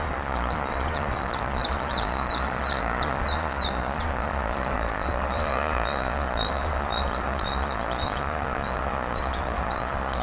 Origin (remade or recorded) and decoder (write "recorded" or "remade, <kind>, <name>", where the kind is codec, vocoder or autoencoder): remade, vocoder, Vocos